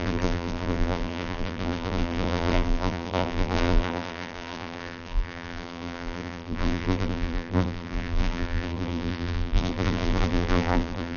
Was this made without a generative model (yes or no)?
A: no